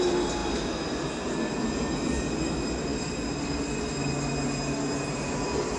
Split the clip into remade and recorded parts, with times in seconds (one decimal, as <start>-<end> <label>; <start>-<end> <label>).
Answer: 0.0-5.8 recorded